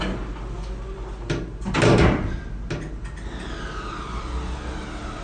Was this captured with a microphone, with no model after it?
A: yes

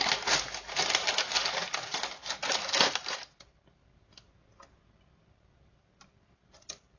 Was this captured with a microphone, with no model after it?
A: yes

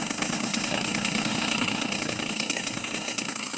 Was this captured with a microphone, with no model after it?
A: no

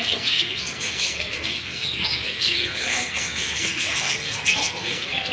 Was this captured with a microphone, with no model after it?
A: no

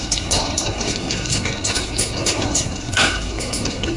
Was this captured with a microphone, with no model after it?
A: no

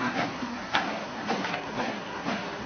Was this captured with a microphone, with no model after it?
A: no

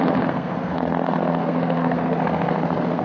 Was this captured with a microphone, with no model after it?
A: no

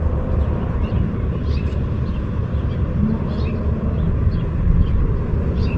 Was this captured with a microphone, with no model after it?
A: yes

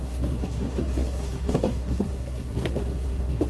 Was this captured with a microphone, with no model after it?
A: no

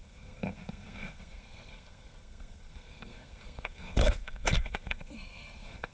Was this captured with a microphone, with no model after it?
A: no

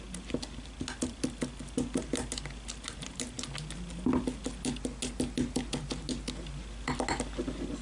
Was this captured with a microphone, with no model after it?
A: yes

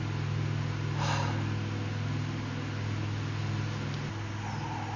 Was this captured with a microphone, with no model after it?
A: yes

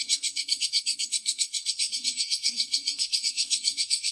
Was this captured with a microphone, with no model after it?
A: no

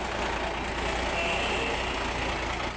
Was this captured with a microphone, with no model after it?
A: yes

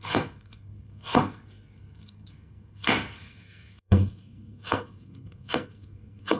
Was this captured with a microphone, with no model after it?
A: no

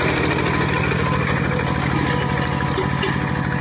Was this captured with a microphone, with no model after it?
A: yes